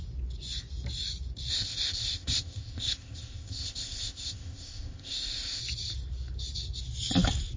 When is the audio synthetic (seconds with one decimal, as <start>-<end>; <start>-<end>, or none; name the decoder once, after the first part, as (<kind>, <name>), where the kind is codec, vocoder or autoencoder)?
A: 1.5-5.6 (codec, ZipCodec)